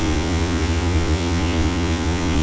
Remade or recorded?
remade